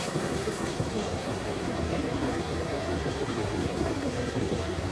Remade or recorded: remade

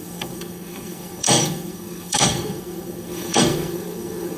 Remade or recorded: remade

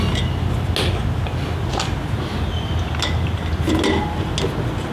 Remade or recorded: recorded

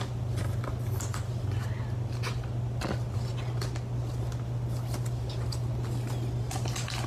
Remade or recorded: recorded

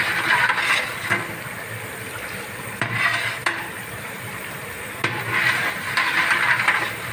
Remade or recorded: recorded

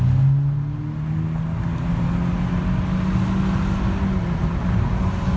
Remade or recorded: recorded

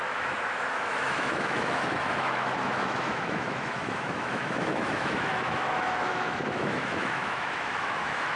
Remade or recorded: remade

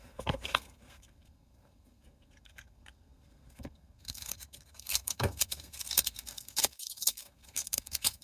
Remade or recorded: remade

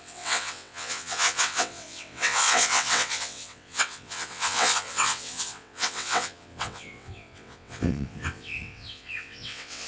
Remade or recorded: remade